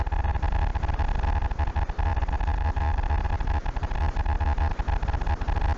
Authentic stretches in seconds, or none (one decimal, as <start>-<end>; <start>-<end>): 0.0-2.1; 4.8-5.8